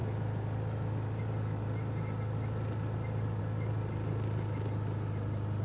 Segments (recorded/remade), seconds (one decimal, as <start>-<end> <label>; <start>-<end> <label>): 0.0-5.6 recorded